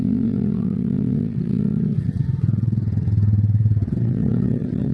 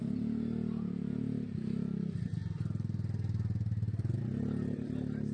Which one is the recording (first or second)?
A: second